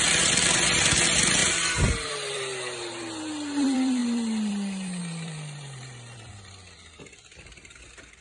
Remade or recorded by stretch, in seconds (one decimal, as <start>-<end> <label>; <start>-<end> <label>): 0.0-1.4 remade; 1.4-2.1 recorded; 2.1-8.2 remade

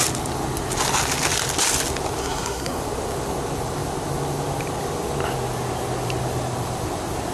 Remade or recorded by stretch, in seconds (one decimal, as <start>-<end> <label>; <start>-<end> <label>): 0.0-2.2 recorded; 2.2-2.8 remade; 2.8-7.3 recorded

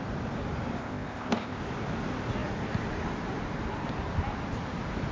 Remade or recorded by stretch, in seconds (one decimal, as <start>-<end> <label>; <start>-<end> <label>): 0.0-0.8 recorded; 0.8-1.6 remade; 1.6-5.1 recorded

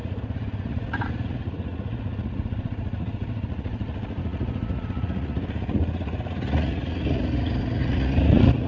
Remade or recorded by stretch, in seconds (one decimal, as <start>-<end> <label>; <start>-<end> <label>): 0.0-8.7 remade

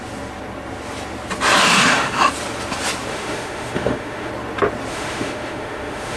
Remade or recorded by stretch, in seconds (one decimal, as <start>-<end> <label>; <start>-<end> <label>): 0.0-1.6 recorded; 1.6-2.3 remade; 2.3-3.1 recorded; 3.1-4.3 remade; 4.3-4.9 recorded; 4.9-6.2 remade

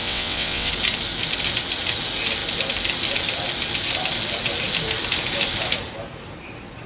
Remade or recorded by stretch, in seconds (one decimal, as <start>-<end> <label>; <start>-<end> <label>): 0.0-0.7 remade; 0.7-6.9 recorded

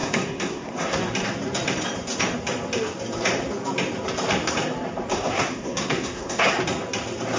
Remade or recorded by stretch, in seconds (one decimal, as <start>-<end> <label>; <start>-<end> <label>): 0.0-1.0 remade; 1.0-5.1 recorded; 5.1-6.6 remade; 6.6-7.4 recorded